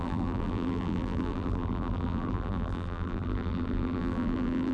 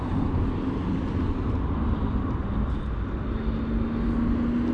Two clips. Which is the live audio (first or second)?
second